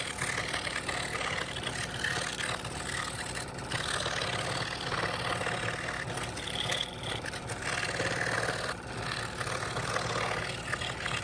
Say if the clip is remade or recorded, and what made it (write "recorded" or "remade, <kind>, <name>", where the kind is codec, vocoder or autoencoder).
recorded